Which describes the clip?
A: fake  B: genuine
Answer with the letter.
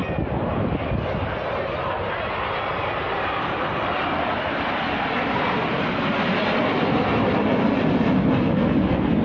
B